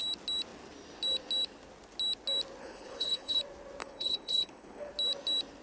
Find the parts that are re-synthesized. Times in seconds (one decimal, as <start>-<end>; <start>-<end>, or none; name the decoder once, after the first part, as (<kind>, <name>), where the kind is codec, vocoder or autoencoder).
2.6-3.4 (codec, HILCodec); 3.8-4.9